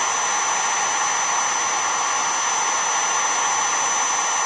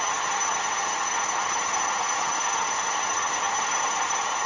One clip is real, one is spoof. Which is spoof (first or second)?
second